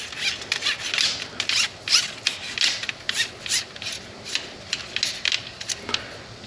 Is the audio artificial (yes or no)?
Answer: no